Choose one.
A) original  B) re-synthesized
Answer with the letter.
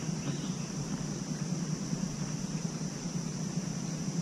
A